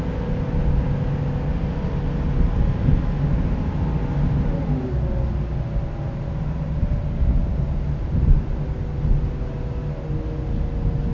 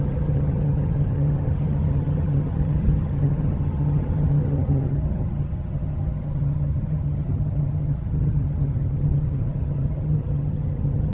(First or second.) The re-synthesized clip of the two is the second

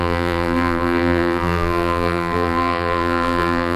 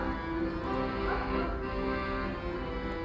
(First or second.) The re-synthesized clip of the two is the first